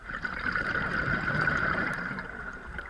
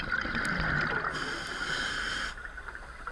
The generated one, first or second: first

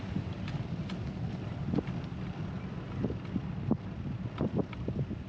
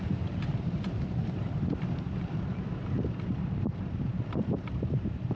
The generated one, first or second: second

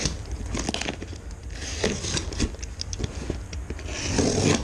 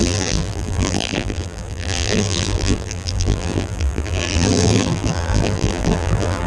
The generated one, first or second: second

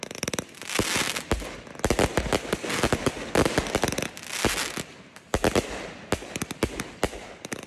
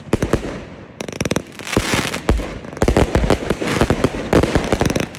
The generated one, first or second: second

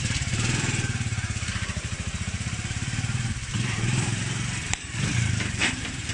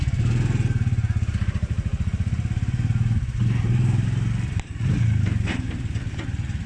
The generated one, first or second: first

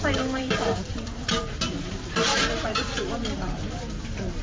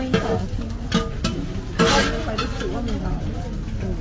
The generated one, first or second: first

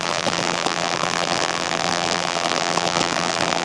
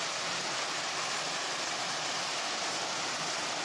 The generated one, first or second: first